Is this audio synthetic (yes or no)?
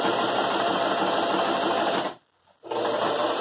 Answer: no